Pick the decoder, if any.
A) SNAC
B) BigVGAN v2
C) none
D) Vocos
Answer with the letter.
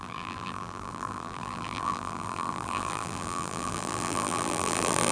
B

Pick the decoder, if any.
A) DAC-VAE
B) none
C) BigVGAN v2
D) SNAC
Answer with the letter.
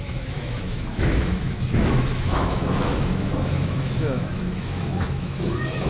A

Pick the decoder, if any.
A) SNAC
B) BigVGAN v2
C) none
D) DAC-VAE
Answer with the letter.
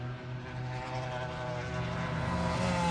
C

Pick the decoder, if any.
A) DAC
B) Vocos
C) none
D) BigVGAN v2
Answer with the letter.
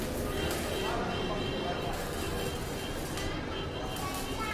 C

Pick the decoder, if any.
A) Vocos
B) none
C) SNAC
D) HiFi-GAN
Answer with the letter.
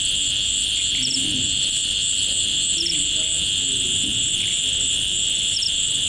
B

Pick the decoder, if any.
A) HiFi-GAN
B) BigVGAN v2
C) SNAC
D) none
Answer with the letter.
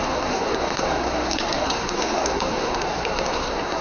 C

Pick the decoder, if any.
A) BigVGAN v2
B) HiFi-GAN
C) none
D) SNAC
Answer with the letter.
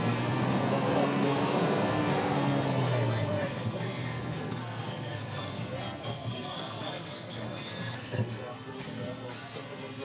D